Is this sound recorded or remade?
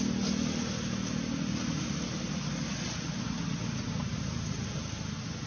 recorded